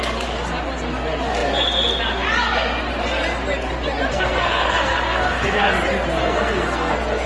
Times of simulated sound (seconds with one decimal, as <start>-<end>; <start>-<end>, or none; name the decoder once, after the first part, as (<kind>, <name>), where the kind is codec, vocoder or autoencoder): 4.1-5.7 (codec, SNAC); 6.2-7.3